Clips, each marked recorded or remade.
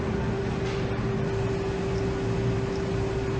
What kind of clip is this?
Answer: recorded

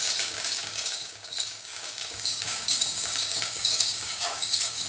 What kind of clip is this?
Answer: remade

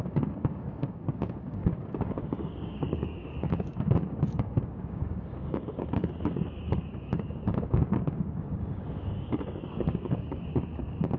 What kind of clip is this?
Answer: remade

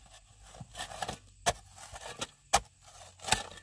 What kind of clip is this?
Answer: recorded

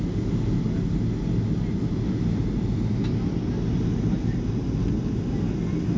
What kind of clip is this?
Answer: recorded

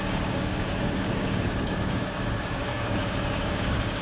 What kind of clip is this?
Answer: remade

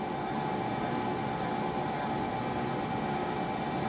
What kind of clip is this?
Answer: recorded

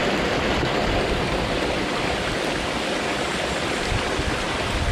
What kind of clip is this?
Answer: recorded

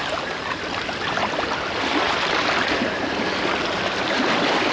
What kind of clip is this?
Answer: recorded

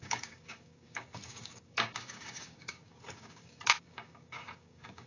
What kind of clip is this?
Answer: remade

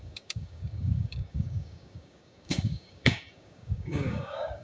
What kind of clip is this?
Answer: remade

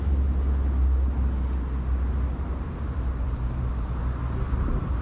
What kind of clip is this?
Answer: recorded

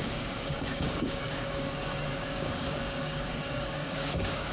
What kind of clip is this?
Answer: remade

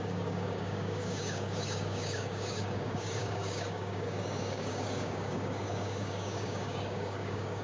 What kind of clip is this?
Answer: remade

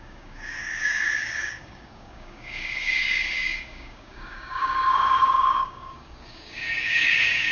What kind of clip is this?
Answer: remade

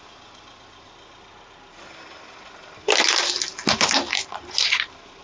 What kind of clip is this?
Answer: recorded